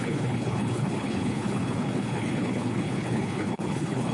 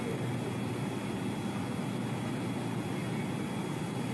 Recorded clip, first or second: second